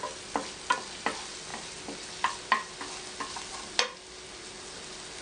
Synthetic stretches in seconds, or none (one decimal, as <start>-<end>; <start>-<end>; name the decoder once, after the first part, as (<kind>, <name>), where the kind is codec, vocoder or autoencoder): none